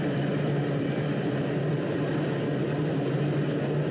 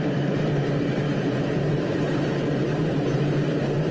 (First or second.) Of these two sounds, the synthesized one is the second